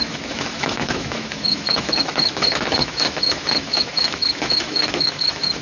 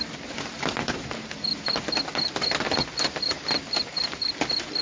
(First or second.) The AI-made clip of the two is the first